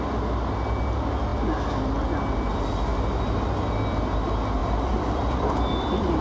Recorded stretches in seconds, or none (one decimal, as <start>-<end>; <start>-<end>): 0.0-4.6